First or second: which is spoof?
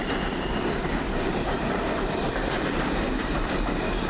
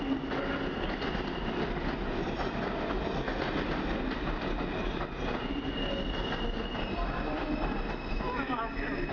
first